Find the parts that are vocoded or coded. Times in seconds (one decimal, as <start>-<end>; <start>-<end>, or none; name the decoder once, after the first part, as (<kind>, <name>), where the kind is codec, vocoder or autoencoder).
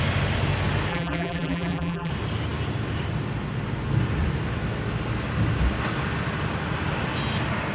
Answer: 0.9-2.1 (vocoder, BigVGAN v2)